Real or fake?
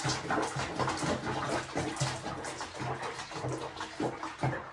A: real